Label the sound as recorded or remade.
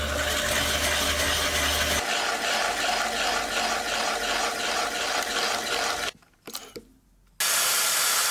recorded